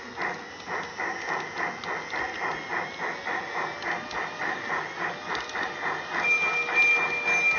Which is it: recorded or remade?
recorded